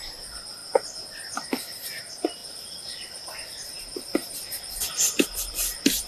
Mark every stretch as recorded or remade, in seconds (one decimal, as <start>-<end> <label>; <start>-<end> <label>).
0.0-2.4 recorded; 2.4-3.8 remade; 3.8-4.2 recorded; 4.2-5.0 remade; 5.0-6.1 recorded